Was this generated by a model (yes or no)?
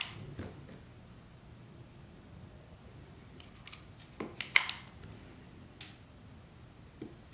no